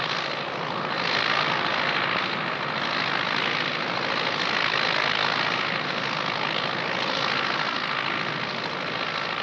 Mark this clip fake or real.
real